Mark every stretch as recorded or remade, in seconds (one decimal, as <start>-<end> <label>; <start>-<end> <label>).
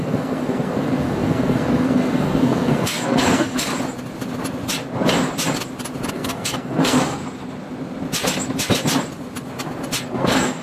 0.0-3.7 remade; 3.7-6.1 recorded; 6.1-7.2 remade; 7.2-10.1 recorded; 10.1-10.6 remade